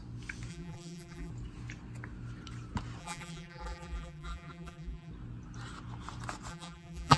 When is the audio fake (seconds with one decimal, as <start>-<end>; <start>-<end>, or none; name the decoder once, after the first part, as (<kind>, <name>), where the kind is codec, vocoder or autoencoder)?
0.5-1.3 (vocoder, BigVGAN v2); 3.0-5.1; 6.5-7.2